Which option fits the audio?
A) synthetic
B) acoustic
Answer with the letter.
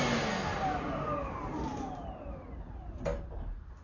B